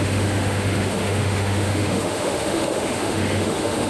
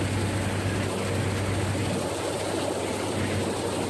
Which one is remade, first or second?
first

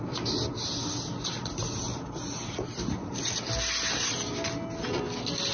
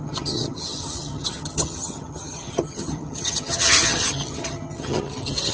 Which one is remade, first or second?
second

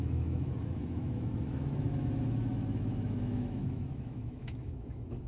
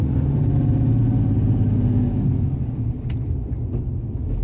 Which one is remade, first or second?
first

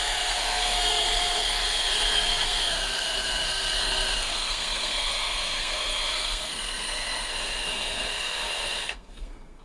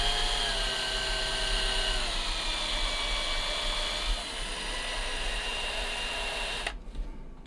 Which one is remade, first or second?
first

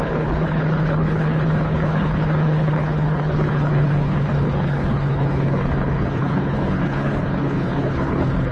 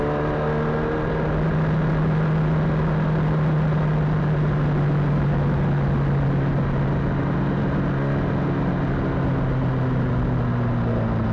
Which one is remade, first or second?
first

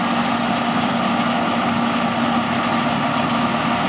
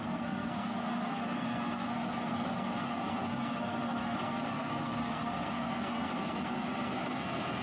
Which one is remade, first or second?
second